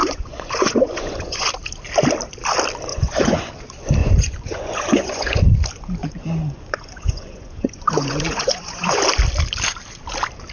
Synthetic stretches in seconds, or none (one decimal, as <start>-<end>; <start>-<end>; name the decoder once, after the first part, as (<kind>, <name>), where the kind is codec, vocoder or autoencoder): 0.0-1.5 (vocoder, Vocos); 2.9-3.5; 4.0-5.4; 6.0-9.0